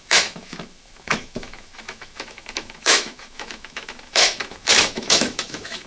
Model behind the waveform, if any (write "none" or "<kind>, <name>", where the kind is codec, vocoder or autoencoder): autoencoder, DAC-VAE